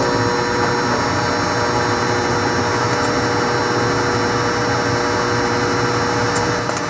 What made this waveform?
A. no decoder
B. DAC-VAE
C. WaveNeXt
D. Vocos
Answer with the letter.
A